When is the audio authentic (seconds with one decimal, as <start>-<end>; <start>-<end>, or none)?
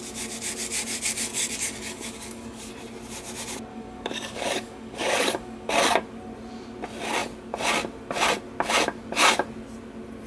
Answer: 0.0-1.3; 2.7-3.7; 5.7-10.3